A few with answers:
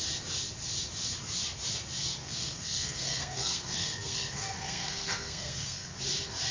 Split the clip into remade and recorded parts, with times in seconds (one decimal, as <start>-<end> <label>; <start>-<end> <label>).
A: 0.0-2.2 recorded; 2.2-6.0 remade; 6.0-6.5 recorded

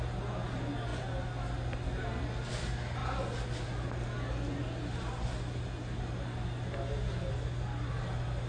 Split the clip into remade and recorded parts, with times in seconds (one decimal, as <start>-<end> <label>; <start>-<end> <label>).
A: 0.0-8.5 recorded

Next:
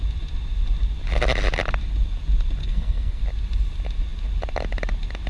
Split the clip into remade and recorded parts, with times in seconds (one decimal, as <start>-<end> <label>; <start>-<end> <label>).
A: 0.0-2.6 recorded; 2.6-3.2 remade; 3.2-5.3 recorded

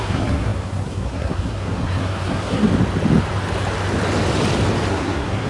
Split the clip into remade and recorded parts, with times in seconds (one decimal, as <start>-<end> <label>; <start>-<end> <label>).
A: 0.0-2.7 remade; 2.7-4.9 recorded; 4.9-5.5 remade

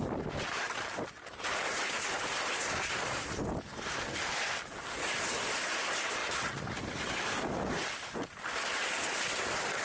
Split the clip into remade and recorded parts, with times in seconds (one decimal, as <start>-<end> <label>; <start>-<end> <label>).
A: 0.0-9.8 recorded

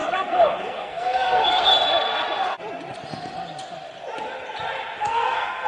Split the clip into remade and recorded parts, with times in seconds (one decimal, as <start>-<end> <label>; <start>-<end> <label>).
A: 0.0-1.7 remade; 1.7-5.0 recorded; 5.0-5.7 remade

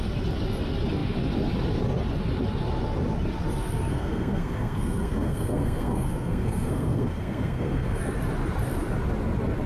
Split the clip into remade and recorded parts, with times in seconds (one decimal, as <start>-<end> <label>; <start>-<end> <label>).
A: 0.0-3.9 recorded; 3.9-8.0 remade; 8.0-9.7 recorded

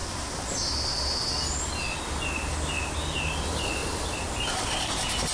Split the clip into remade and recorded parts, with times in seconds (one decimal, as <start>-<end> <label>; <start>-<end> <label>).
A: 0.0-5.3 recorded